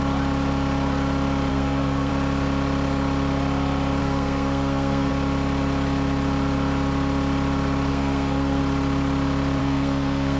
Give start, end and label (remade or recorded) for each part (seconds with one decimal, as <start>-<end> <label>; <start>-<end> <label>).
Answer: 0.0-1.5 recorded; 1.5-2.1 remade; 2.1-4.0 recorded; 4.0-5.1 remade; 5.1-7.9 recorded; 7.9-8.6 remade; 8.6-9.6 recorded; 9.6-10.4 remade